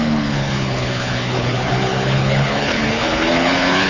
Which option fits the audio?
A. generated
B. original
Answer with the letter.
A